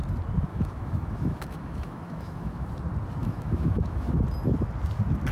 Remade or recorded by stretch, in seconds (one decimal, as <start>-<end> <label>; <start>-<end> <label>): 0.0-0.5 recorded; 0.5-2.7 remade; 2.7-3.2 recorded; 3.2-4.2 remade; 4.2-5.3 recorded